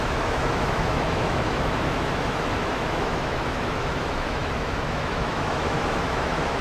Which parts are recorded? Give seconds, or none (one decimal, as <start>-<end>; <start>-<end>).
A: none